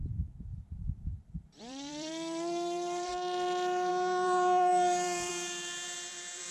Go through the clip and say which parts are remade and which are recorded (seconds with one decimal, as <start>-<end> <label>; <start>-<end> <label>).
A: 0.0-3.1 remade; 3.1-3.9 recorded; 3.9-6.5 remade